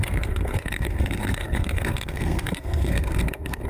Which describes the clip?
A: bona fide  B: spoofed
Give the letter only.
B